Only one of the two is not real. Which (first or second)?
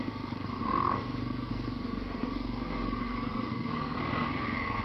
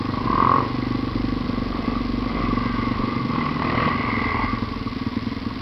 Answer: first